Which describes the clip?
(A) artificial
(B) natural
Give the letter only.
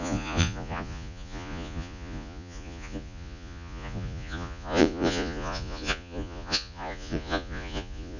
A